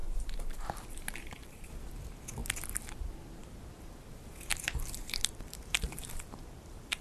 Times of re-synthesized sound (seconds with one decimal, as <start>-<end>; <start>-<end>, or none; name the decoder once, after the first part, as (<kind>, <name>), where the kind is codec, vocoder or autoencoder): 0.0-1.7 (vocoder, BigVGAN v2); 4.5-7.0